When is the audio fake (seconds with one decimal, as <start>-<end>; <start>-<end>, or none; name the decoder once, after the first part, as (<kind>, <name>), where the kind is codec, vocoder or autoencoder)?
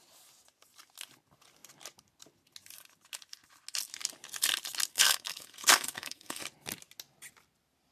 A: 4.9-6.4 (codec, SNAC)